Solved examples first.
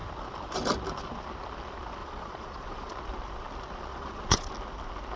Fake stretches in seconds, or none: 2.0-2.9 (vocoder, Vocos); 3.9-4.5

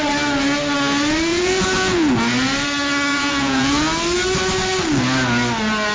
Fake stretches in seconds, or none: 1.3-2.1 (vocoder, Vocos); 3.1-3.8

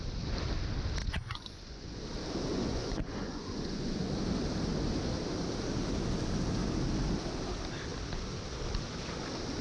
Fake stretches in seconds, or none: 1.0-2.0 (vocoder, Vocos); 2.5-4.1

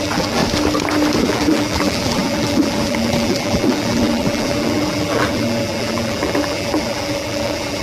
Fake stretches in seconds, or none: 0.0-0.4 (vocoder, BigVGAN v2); 1.2-7.8

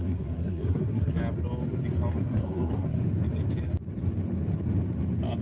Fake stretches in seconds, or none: 0.0-1.2 (codec, SNAC); 2.1-3.0